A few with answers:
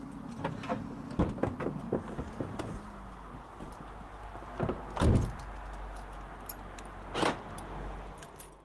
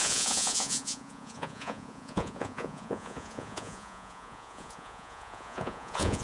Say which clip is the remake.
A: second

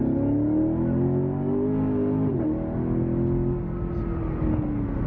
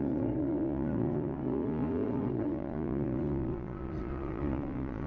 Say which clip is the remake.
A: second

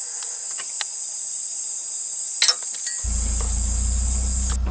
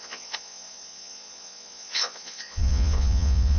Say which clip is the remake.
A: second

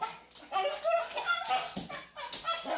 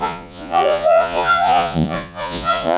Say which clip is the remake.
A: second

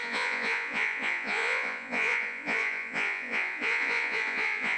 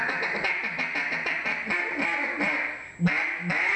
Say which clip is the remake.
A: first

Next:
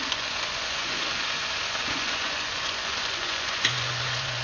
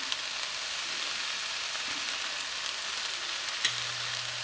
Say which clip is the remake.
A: first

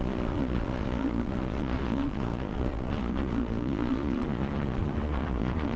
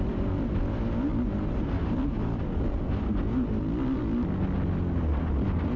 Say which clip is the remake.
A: first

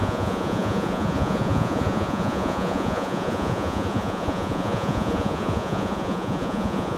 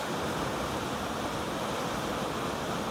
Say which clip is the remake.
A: first